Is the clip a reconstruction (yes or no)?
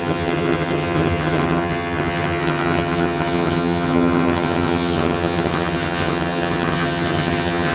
yes